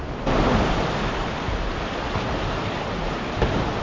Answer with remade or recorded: recorded